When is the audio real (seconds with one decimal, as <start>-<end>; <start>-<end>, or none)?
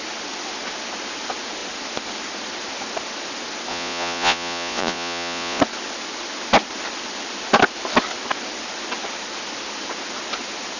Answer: 0.0-3.7; 5.6-10.8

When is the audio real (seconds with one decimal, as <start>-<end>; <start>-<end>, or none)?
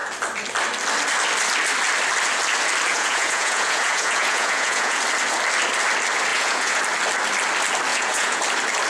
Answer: 0.0-2.9; 5.0-6.3; 6.8-7.9; 8.4-8.9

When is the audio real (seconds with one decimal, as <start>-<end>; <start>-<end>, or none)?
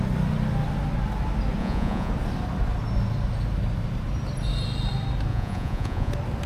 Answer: 0.0-1.6; 2.1-5.3; 6.1-6.5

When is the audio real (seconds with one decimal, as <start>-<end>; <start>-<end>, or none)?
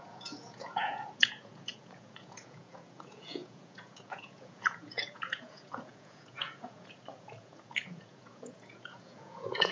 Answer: none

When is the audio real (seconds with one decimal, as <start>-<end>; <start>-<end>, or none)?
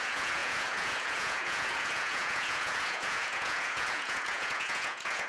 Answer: none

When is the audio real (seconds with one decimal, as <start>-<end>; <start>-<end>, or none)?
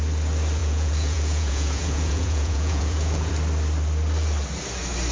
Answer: 0.0-0.6; 3.3-5.1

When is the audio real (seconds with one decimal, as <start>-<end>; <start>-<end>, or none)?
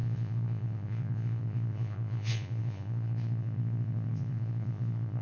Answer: none